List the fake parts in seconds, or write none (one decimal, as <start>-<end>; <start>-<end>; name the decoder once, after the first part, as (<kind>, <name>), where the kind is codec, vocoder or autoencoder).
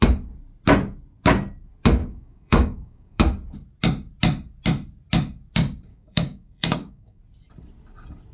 2.0-3.2 (codec, DAC); 5.9-7.2